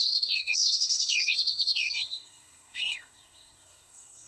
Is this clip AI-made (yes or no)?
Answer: yes